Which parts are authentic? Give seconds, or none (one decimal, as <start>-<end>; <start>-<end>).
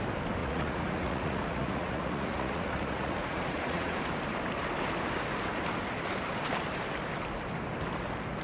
0.0-0.4; 4.0-8.4